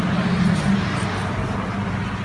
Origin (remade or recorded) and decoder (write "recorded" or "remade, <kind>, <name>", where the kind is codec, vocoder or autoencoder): recorded